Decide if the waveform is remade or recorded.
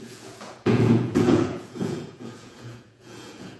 remade